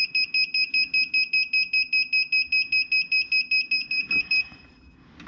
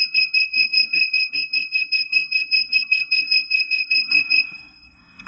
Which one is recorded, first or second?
first